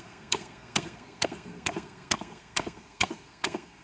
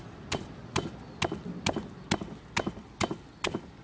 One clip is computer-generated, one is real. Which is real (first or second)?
second